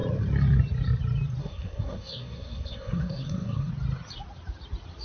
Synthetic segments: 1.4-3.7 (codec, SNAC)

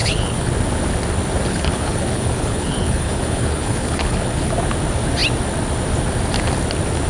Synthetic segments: 0.0-0.5 (codec, HILCodec); 1.5-4.5